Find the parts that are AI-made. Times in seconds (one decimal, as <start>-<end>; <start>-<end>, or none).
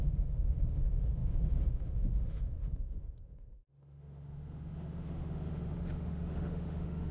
0.0-7.1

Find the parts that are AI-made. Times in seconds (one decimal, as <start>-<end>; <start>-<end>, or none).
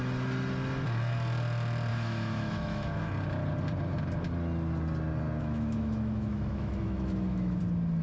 1.9-3.1; 5.4-7.6